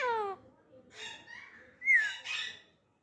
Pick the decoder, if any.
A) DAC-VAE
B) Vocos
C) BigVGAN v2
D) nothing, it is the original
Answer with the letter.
D